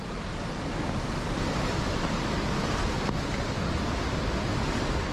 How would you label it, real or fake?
real